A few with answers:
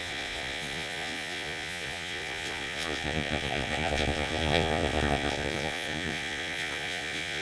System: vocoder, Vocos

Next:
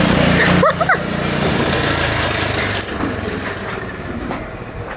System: vocoder, BigVGAN v2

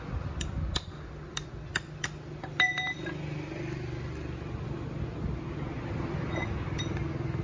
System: none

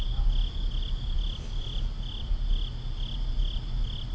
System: none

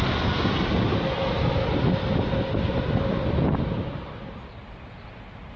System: none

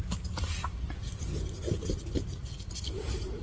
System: none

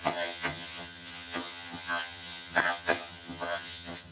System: vocoder, HiFi-GAN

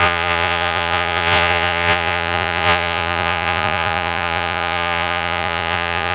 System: vocoder, Vocos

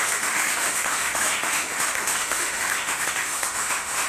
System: autoencoder, DAC-VAE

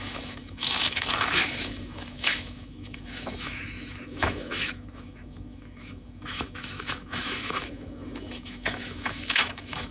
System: autoencoder, DAC-VAE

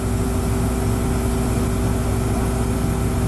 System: none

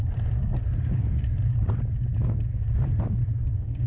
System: none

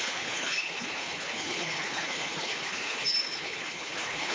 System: codec, HILCodec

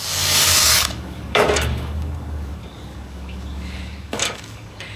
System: codec, DAC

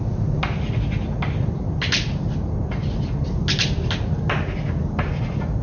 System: none